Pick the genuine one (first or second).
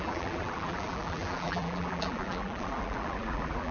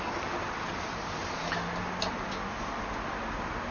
second